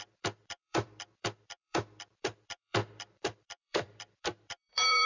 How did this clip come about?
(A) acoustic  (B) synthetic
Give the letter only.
B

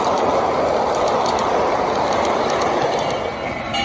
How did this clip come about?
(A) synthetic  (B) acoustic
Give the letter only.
B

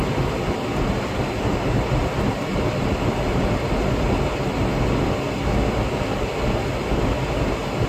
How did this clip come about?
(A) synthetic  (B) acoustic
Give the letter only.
B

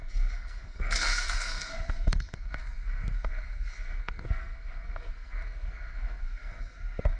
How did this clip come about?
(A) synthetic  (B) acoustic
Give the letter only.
A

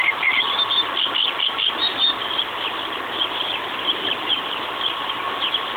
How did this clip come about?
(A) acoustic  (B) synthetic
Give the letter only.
A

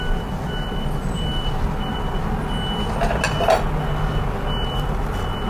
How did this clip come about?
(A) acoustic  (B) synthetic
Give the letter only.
A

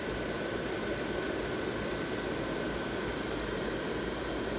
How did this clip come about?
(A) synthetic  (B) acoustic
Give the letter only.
B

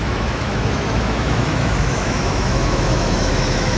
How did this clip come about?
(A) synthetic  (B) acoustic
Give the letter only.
A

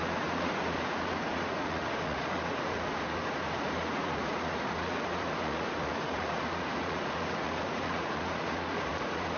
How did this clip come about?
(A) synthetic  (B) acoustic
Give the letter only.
A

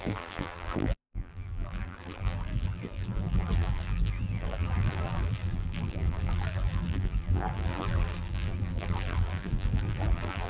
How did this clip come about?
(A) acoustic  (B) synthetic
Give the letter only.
B